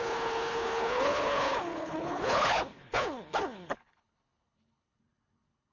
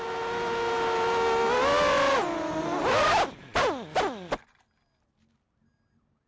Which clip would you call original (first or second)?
second